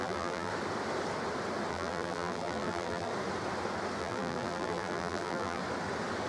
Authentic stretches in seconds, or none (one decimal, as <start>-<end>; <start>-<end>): 0.5-1.7; 3.1-4.0; 5.6-6.3